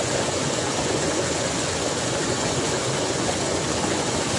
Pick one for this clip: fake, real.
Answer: fake